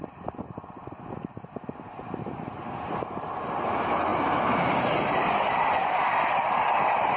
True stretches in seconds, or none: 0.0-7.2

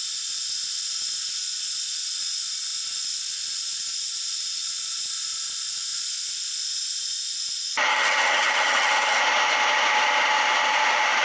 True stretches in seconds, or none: 0.0-7.9; 9.2-11.2

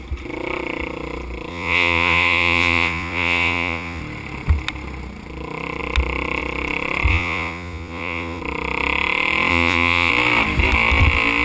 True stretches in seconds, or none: 0.0-1.5; 4.0-7.1; 8.4-9.5; 10.1-11.4